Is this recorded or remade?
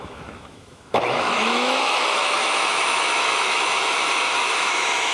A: remade